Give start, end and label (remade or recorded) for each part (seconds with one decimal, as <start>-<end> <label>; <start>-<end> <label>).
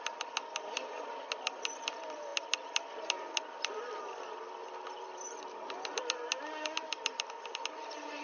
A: 0.0-8.2 recorded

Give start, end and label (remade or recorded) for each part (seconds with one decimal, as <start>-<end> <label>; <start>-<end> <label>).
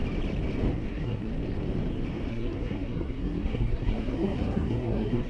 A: 0.0-0.7 recorded; 0.7-1.3 remade; 1.3-2.3 recorded; 2.3-5.3 remade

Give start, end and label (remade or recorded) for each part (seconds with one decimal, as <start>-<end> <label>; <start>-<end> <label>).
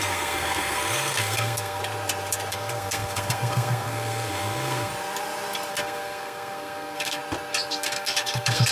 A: 0.0-1.8 remade; 1.8-2.5 recorded; 2.5-4.9 remade; 4.9-5.7 recorded; 5.7-7.2 remade; 7.2-7.7 recorded; 7.7-8.7 remade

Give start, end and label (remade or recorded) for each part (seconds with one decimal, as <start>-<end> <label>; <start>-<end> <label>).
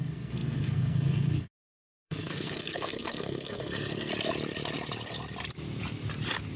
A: 0.0-4.1 remade; 4.1-6.6 recorded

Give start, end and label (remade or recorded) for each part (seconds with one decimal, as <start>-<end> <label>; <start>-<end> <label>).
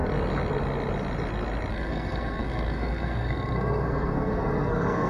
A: 0.0-1.7 recorded; 1.7-5.1 remade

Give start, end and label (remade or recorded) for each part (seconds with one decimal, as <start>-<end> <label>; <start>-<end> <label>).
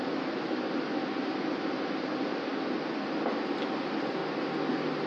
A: 0.0-5.1 recorded